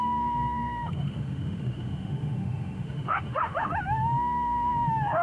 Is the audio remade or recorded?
remade